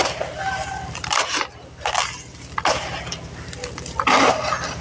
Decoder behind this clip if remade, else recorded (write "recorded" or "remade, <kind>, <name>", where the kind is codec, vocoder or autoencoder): recorded